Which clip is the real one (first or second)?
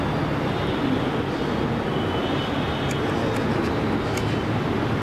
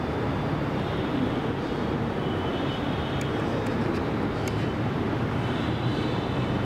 first